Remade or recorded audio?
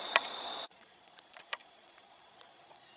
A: remade